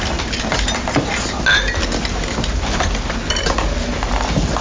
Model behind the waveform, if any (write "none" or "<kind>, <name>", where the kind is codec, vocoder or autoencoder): none